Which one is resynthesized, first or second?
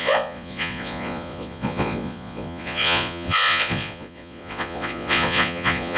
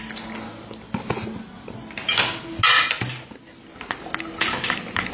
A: first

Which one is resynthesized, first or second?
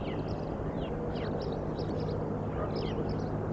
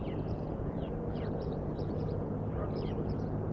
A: second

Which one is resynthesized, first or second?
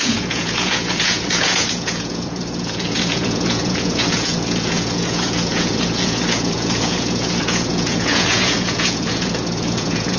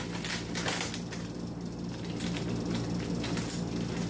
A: first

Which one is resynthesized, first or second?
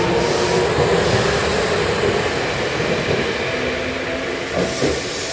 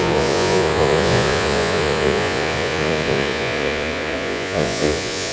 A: second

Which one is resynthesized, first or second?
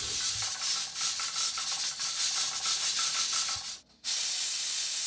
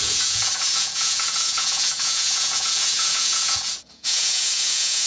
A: second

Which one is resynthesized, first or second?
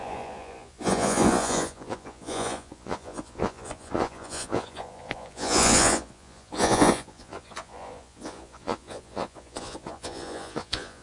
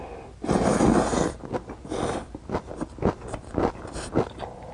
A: first